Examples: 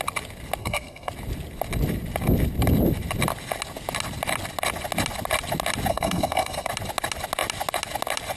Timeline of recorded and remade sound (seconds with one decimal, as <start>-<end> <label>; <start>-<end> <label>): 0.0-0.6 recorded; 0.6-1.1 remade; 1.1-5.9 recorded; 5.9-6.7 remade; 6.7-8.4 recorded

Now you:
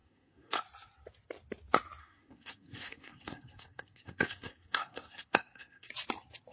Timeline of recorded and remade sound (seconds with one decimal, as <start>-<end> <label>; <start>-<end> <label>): 0.0-0.6 remade; 0.6-2.0 recorded; 2.0-5.9 remade; 5.9-6.5 recorded

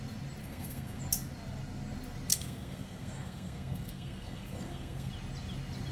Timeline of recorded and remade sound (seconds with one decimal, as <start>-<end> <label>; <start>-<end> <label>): 0.0-0.4 recorded; 0.4-1.0 remade; 1.0-2.3 recorded; 2.3-5.1 remade; 5.1-5.9 recorded

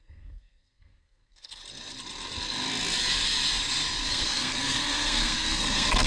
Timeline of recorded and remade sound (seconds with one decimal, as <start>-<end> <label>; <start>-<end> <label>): 0.0-1.6 remade; 1.6-4.1 recorded; 4.1-6.1 remade

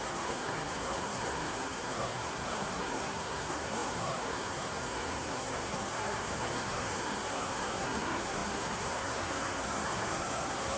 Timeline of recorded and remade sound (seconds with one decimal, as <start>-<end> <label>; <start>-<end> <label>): 0.0-10.8 remade

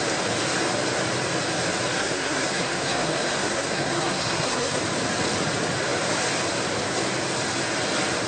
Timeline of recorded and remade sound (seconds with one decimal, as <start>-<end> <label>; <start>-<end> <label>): 0.0-2.0 recorded; 2.0-4.8 remade; 4.8-8.3 recorded

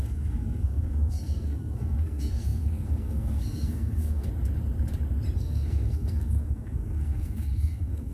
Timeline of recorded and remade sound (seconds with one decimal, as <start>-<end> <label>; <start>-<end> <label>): 0.0-4.3 remade; 4.3-5.4 recorded; 5.4-8.1 remade

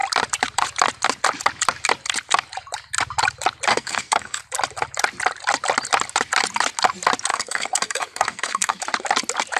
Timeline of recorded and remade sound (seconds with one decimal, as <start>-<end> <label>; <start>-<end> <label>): 0.0-3.7 recorded; 3.7-4.4 remade; 4.4-7.3 recorded; 7.3-8.8 remade; 8.8-9.6 recorded